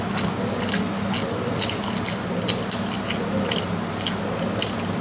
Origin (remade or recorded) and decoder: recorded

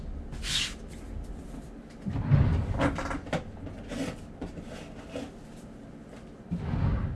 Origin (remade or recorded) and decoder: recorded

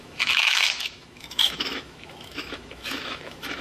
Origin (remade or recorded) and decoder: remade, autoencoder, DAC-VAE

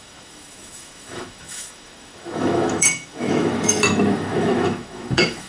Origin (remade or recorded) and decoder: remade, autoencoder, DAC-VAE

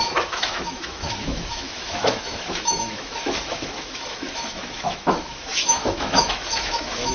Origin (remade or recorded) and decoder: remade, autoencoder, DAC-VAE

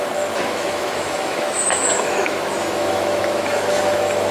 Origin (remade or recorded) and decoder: remade, autoencoder, DAC-VAE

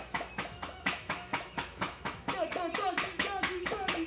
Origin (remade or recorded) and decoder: remade, autoencoder, DAC-VAE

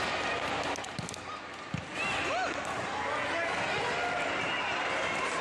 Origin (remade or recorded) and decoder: recorded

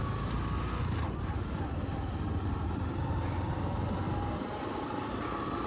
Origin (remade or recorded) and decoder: recorded